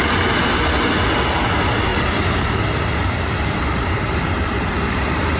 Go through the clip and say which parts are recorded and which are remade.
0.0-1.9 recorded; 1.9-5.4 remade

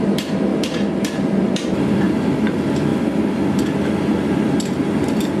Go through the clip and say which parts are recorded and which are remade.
0.0-5.4 recorded

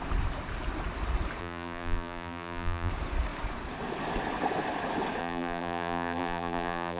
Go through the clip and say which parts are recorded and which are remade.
0.0-1.4 recorded; 1.4-2.9 remade; 2.9-5.2 recorded; 5.2-7.0 remade

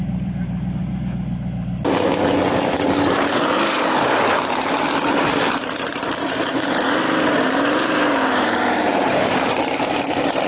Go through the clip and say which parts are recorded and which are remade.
0.0-0.8 remade; 0.8-5.9 recorded; 5.9-10.5 remade

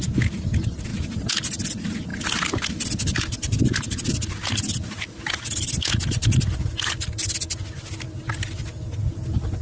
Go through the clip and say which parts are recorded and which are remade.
0.0-2.1 recorded; 2.1-3.6 remade; 3.6-9.6 recorded

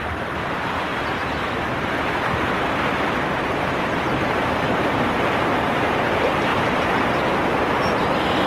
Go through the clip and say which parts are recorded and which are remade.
0.0-0.9 remade; 0.9-3.3 recorded; 3.3-6.5 remade; 6.5-7.3 recorded; 7.3-8.5 remade

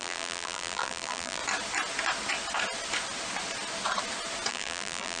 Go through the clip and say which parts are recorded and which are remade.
0.0-1.4 remade; 1.4-4.5 recorded; 4.5-5.2 remade

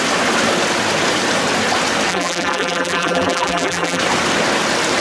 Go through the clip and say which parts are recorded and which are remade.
0.0-2.1 recorded; 2.1-4.0 remade; 4.0-5.0 recorded